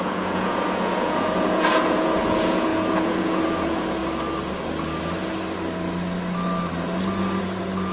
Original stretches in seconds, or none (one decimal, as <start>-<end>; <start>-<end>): 4.0-7.4